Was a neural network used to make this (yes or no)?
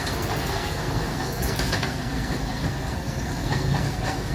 yes